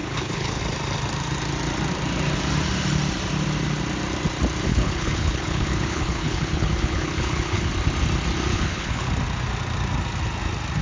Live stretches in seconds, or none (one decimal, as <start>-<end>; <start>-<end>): 0.6-4.7; 7.7-8.5; 9.1-10.8